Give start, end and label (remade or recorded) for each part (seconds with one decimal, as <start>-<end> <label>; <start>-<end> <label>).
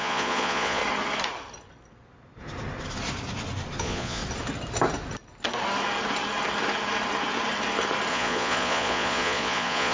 0.0-0.8 remade; 0.8-3.8 recorded; 3.8-4.2 remade; 4.2-8.1 recorded; 8.1-9.9 remade